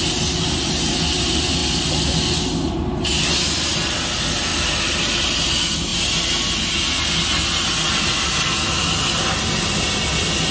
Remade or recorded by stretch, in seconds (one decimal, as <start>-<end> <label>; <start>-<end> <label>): 0.0-4.5 recorded; 4.5-5.5 remade; 5.5-10.5 recorded